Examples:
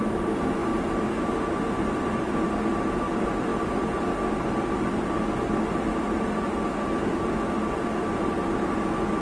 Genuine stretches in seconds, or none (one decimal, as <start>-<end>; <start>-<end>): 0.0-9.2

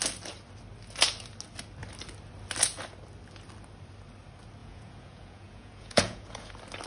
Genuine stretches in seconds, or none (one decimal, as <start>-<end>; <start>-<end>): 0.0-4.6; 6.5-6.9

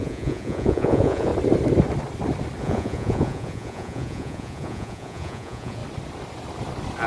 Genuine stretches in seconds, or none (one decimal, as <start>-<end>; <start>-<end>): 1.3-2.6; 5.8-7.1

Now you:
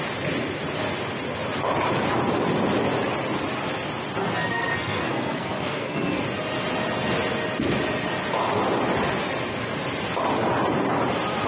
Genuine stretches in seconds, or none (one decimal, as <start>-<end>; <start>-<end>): 0.0-4.2; 6.2-11.5

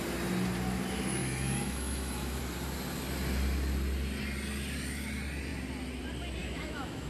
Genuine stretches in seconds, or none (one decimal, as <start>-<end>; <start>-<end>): 0.0-1.2; 2.4-6.4

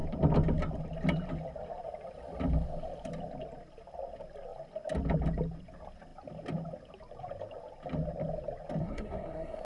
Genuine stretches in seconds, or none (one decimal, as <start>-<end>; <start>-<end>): 0.0-8.8